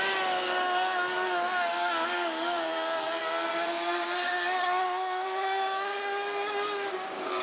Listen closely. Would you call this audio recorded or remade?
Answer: remade